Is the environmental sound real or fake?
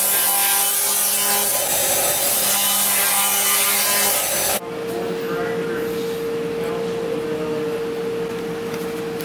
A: real